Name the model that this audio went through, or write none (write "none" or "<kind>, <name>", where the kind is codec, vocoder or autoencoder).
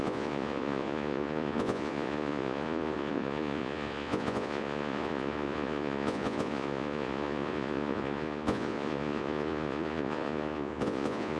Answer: vocoder, Vocos